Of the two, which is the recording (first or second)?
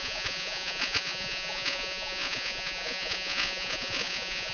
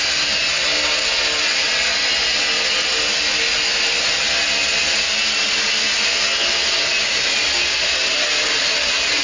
second